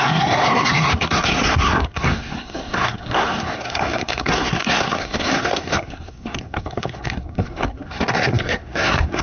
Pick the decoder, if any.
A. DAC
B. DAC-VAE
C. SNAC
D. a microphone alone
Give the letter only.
C